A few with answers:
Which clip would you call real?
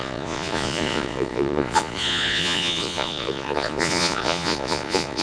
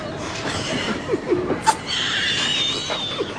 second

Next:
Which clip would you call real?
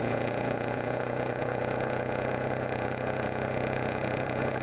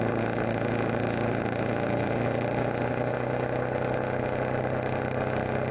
second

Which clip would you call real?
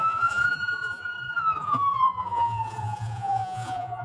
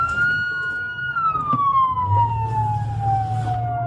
second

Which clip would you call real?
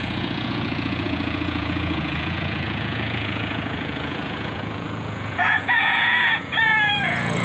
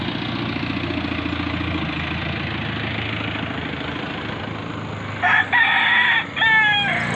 second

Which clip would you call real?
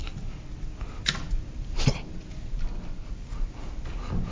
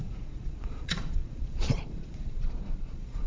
first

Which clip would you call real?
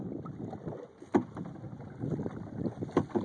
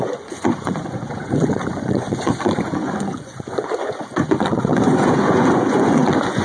first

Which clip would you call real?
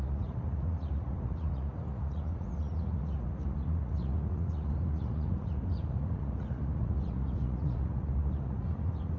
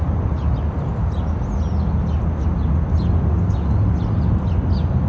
second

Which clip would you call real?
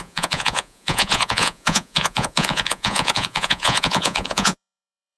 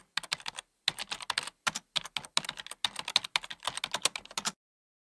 second